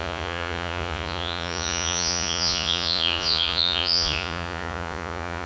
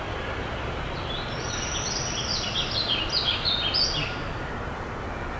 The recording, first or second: second